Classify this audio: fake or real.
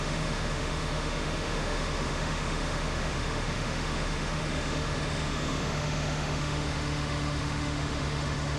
fake